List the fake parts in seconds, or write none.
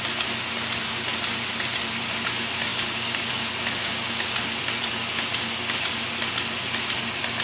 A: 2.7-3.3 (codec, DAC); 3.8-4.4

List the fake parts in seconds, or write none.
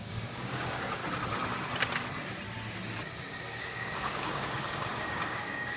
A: 0.0-1.0 (codec, DAC); 3.5-5.8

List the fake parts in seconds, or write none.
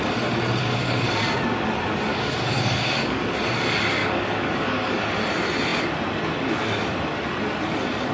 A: 0.6-1.1 (codec, DAC); 2.1-3.2; 4.0-5.0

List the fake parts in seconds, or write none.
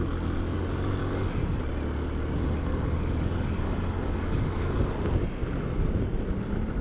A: 1.0-1.6 (codec, DAC); 2.4-4.9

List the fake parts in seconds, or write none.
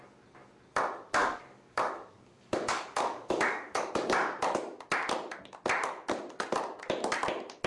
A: 1.2-3.9 (codec, DAC)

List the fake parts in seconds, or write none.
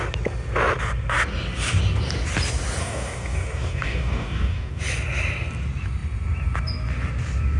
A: 2.8-4.8 (codec, DAC)